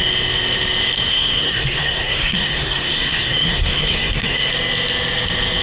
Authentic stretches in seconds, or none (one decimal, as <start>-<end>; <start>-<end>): 0.0-1.1; 4.5-5.6